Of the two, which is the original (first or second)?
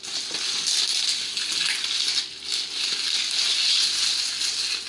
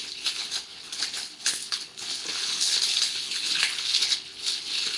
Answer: first